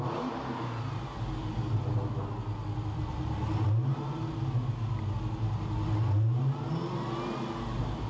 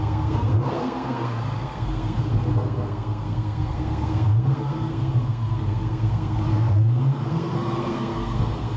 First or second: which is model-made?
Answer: second